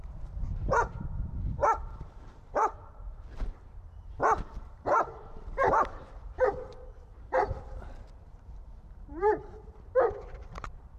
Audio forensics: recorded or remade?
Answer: remade